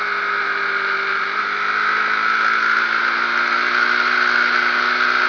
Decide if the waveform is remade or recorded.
recorded